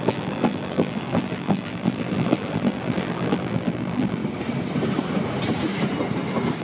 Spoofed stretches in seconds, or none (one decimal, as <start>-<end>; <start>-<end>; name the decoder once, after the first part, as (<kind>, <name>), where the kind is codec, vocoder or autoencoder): 0.0-4.2 (vocoder, BigVGAN v2)